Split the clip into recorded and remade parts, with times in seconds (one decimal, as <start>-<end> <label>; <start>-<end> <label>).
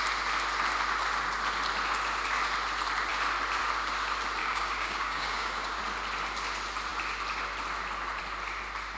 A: 0.0-4.4 recorded; 4.4-5.8 remade; 5.8-9.0 recorded